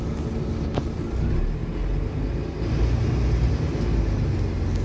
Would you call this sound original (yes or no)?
yes